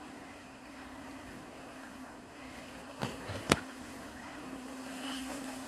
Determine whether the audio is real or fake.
fake